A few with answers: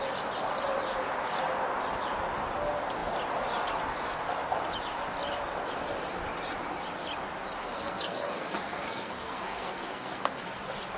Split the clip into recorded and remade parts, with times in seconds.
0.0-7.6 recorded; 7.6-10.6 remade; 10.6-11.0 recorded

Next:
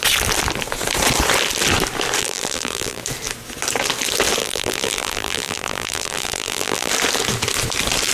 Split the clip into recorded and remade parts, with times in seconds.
0.0-2.2 recorded; 2.2-3.0 remade; 3.0-4.4 recorded; 4.4-6.9 remade; 6.9-8.1 recorded

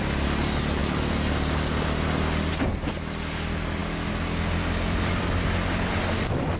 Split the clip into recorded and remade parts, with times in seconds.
0.0-6.6 recorded